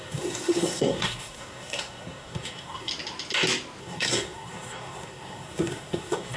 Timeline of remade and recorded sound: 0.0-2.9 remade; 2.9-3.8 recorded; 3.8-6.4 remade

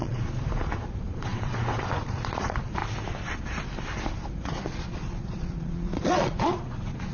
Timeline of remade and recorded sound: 0.0-2.8 remade; 2.8-4.4 recorded; 4.4-7.1 remade

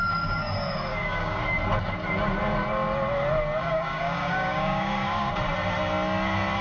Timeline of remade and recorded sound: 0.0-0.9 recorded; 0.9-1.4 remade; 1.4-3.6 recorded; 3.6-5.3 remade; 5.3-6.6 recorded

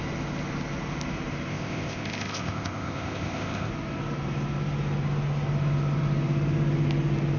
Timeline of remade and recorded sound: 0.0-1.5 recorded; 1.5-3.7 remade; 3.7-7.4 recorded

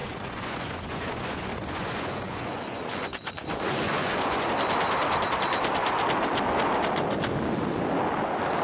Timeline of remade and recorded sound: 0.0-4.5 remade; 4.5-8.6 recorded

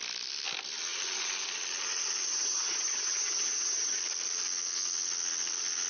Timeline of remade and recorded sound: 0.0-2.3 recorded; 2.3-4.0 remade; 4.0-5.9 recorded

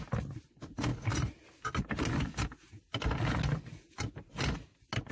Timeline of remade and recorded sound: 0.0-5.1 recorded